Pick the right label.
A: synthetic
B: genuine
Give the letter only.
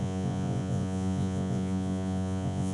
A